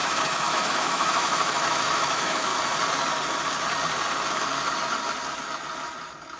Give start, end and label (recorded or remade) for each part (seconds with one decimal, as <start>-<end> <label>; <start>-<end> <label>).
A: 0.0-2.5 remade; 2.5-6.4 recorded

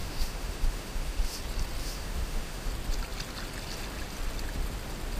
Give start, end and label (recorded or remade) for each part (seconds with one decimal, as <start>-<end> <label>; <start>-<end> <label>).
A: 0.0-1.4 remade; 1.4-1.8 recorded; 1.8-2.7 remade; 2.7-5.2 recorded

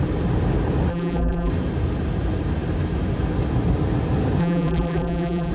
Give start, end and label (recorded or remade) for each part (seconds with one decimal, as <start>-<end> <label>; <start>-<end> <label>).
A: 0.0-0.9 recorded; 0.9-1.5 remade; 1.5-4.4 recorded; 4.4-5.5 remade

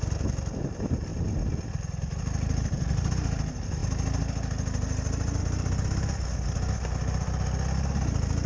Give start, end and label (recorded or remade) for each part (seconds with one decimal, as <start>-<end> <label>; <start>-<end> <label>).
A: 0.0-8.5 recorded